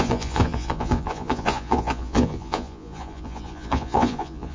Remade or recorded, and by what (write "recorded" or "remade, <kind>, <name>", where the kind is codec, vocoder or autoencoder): remade, vocoder, Vocos